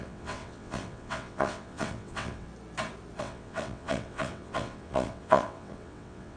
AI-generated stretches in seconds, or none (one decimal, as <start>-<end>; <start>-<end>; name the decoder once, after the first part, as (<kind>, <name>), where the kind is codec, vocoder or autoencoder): 0.0-2.5 (vocoder, WaveNeXt); 3.2-6.4